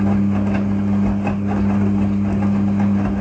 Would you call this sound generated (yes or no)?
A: no